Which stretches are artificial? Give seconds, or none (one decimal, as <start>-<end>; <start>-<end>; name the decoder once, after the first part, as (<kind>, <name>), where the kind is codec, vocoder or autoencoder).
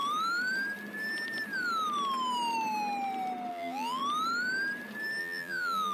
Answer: 3.5-4.0 (vocoder, BigVGAN v2); 5.2-5.9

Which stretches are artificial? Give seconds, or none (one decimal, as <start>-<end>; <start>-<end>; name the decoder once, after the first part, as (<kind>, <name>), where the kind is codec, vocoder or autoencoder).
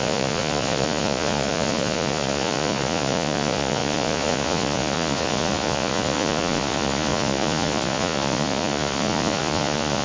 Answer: 0.0-10.0 (vocoder, Vocos)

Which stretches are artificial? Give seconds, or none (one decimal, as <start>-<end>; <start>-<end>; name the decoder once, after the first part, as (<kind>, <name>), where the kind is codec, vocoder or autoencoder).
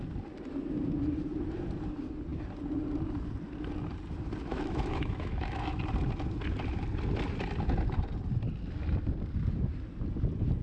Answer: 4.5-5.8 (autoencoder, DAC-VAE)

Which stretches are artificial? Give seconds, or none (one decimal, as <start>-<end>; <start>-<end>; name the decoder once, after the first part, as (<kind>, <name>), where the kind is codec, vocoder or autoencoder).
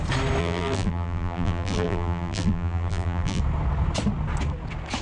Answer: 0.4-3.4 (vocoder, BigVGAN v2)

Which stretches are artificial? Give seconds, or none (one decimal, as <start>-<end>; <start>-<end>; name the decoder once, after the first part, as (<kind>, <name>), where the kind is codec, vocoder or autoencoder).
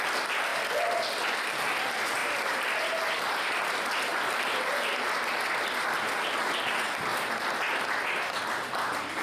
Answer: none